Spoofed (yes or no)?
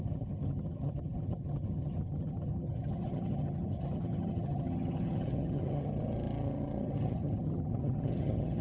yes